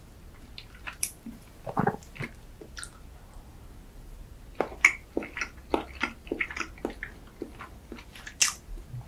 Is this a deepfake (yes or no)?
no